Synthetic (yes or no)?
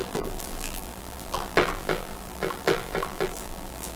yes